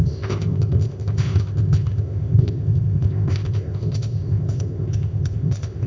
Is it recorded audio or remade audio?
remade